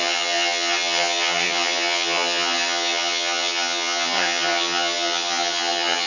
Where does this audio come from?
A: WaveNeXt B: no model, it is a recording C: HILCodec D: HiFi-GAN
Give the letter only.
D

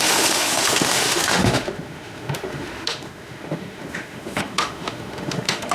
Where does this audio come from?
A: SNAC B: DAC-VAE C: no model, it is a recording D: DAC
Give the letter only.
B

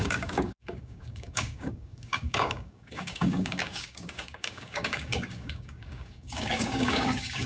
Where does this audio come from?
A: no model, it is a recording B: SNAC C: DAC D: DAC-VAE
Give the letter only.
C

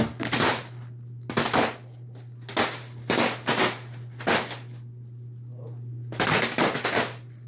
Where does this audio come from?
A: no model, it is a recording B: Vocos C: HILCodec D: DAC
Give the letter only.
A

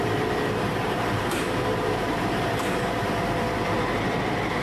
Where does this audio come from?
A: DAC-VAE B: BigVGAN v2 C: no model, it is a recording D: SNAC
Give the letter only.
B